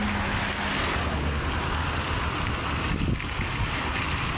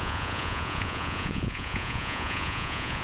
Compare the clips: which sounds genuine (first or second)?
first